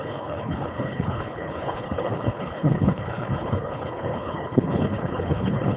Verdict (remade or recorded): remade